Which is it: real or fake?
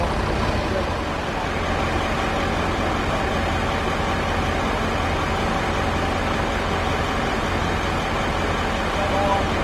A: real